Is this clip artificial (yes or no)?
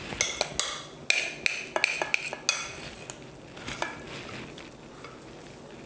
no